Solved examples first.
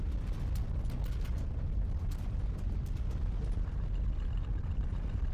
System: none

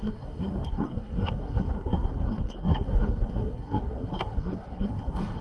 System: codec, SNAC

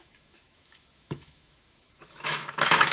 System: autoencoder, DAC-VAE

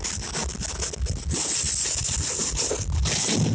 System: none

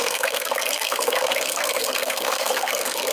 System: codec, SNAC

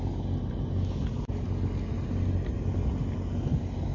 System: none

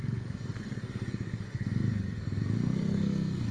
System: codec, SNAC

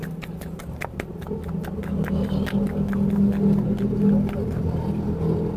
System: none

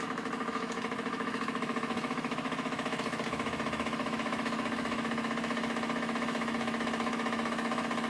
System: autoencoder, DAC-VAE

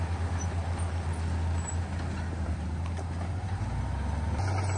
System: none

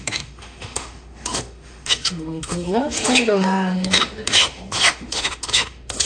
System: autoencoder, DAC-VAE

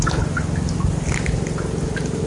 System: none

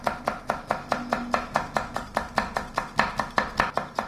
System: none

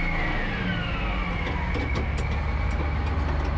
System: none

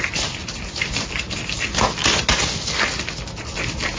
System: none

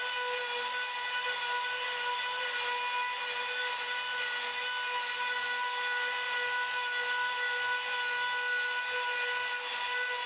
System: none